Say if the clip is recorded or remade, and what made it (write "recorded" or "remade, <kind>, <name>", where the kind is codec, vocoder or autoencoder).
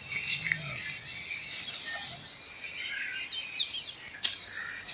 recorded